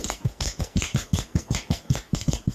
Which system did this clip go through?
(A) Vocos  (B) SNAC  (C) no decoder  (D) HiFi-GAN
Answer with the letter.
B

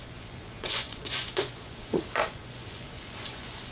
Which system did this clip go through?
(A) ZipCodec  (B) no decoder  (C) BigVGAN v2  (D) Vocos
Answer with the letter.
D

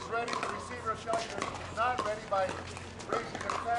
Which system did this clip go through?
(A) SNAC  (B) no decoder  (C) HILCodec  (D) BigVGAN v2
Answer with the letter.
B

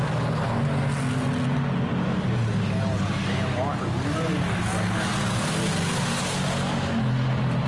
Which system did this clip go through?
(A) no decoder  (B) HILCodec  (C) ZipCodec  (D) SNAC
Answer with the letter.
A